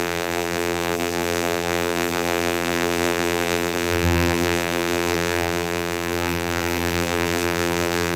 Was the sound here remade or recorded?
remade